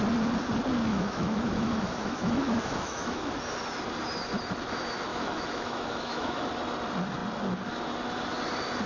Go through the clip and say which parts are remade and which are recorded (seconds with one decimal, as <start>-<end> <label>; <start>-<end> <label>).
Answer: 0.0-0.9 recorded; 0.9-3.3 remade; 3.3-5.1 recorded; 5.1-6.5 remade; 6.5-8.9 recorded